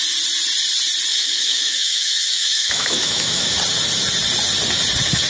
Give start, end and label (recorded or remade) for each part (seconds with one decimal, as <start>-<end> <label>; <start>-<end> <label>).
0.0-1.1 recorded; 1.1-3.5 remade; 3.5-5.3 recorded